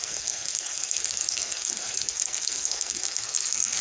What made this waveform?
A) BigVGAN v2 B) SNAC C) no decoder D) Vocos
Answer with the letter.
B